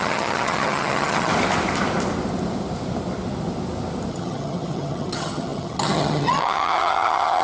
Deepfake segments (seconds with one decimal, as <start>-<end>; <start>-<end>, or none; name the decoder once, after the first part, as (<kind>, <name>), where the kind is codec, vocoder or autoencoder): 0.0-1.3 (vocoder, HiFi-GAN); 4.1-7.4